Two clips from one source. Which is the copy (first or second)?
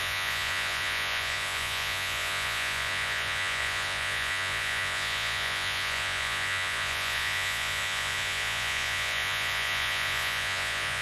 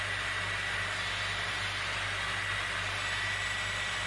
first